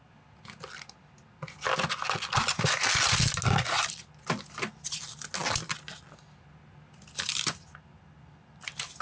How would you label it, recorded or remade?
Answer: recorded